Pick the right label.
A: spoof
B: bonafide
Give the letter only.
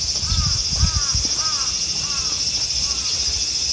B